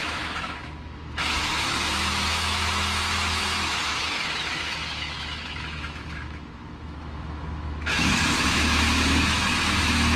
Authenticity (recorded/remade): remade